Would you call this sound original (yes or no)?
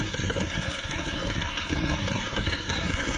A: no